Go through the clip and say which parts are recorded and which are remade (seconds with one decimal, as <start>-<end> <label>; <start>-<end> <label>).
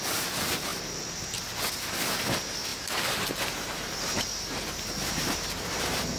0.0-2.7 recorded; 2.7-6.2 remade